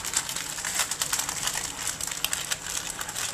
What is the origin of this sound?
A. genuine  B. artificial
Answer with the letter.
A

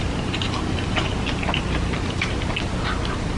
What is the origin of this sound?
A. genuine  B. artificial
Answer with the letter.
B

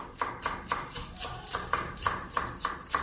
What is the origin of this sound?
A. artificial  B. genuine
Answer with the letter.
B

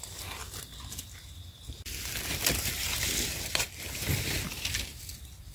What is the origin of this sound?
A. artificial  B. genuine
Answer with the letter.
B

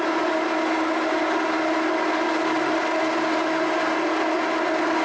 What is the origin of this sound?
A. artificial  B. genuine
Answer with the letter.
B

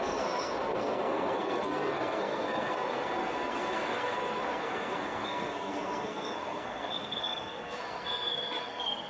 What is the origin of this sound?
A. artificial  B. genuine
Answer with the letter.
A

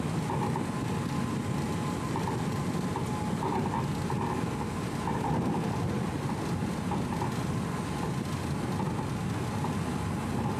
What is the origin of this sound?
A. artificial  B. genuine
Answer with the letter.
B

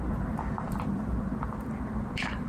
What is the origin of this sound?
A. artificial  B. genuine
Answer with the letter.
B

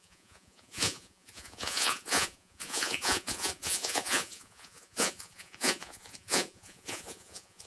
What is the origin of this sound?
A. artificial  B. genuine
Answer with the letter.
A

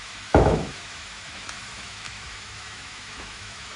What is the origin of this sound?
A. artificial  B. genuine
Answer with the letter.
A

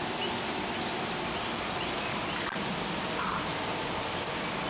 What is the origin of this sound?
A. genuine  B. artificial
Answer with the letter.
A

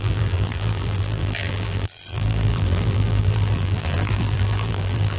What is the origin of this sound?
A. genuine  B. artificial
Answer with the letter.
B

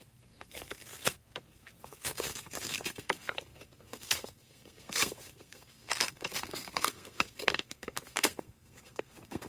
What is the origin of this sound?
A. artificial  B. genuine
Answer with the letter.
A